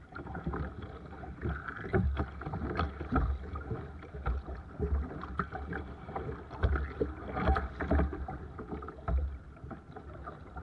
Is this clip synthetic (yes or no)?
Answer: no